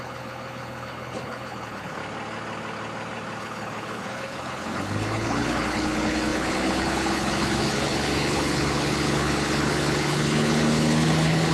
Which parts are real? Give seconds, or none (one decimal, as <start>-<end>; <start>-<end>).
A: 2.0-3.4